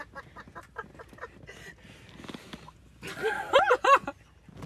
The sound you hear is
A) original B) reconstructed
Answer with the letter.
A